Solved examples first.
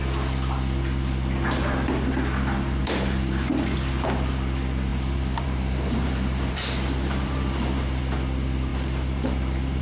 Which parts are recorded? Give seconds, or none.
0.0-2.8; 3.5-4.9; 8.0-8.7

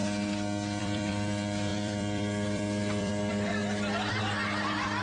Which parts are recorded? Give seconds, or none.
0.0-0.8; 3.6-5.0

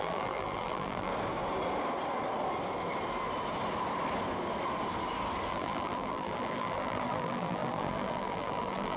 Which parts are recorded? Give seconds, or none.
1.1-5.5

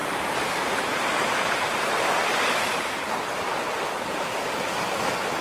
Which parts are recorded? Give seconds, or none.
3.1-5.4

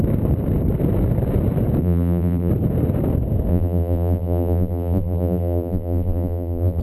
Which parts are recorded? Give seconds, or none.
0.0-1.8; 2.5-3.5